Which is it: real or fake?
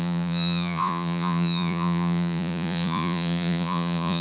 fake